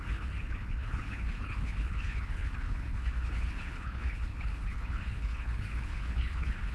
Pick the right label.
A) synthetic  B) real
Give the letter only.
A